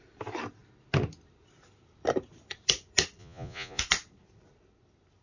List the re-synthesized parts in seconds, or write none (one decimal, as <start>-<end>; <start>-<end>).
3.2-3.8